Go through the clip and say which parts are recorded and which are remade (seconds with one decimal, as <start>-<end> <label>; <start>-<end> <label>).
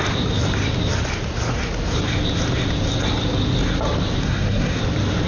0.0-4.2 recorded; 4.2-4.8 remade; 4.8-5.3 recorded